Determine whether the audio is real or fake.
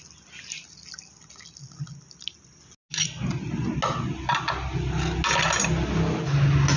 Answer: real